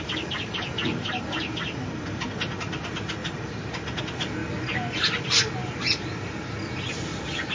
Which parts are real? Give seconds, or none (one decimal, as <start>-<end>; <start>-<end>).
4.4-5.0